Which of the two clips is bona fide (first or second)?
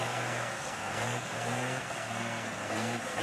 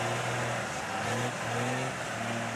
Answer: second